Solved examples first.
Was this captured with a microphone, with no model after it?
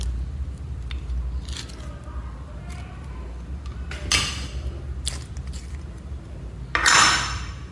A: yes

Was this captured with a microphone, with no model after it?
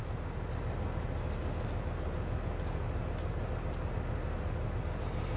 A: yes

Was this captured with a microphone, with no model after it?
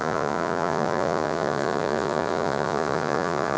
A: no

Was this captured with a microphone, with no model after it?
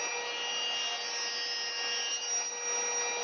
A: yes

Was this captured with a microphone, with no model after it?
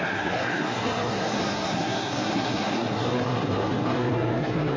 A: no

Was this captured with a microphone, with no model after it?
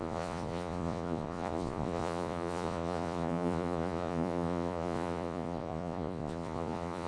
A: no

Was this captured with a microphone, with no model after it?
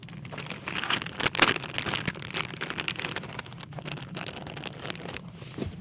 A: yes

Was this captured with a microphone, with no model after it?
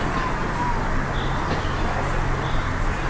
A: yes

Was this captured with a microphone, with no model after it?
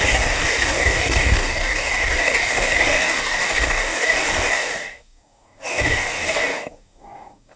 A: no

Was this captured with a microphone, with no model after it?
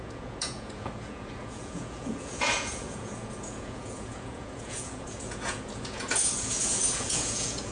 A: no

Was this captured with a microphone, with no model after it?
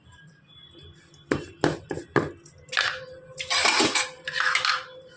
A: yes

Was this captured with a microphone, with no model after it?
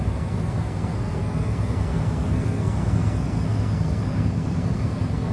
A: no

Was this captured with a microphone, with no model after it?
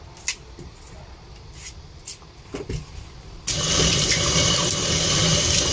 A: yes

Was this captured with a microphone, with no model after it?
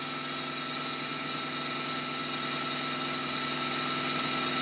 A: yes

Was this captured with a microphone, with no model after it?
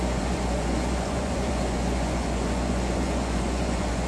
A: no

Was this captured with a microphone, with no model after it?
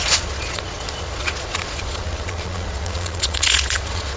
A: no